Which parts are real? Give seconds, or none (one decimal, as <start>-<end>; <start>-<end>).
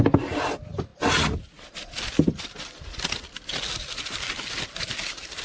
0.0-5.4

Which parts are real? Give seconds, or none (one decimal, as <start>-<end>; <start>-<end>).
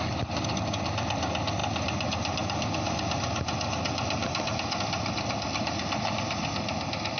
0.0-7.2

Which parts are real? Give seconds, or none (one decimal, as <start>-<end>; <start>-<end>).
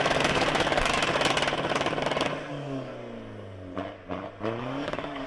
1.0-2.5; 2.9-4.6